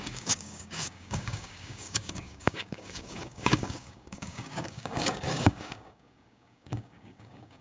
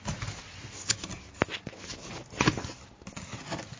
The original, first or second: second